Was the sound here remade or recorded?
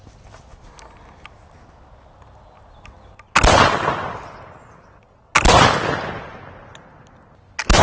recorded